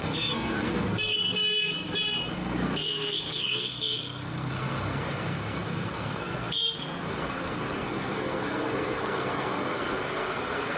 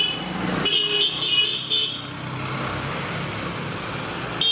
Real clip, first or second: second